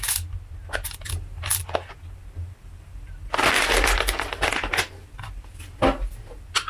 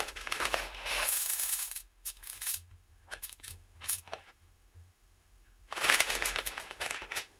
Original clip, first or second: first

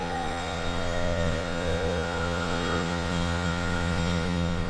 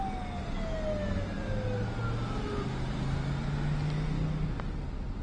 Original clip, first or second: second